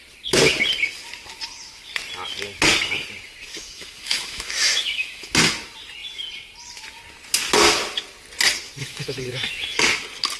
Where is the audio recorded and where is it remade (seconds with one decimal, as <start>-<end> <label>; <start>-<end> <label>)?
0.0-3.5 recorded; 3.5-5.3 remade; 5.3-8.8 recorded; 8.8-9.8 remade; 9.8-10.4 recorded